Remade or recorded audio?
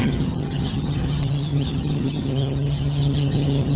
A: remade